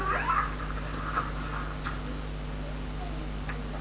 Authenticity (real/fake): real